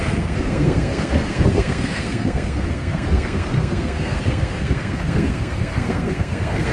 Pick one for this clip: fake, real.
fake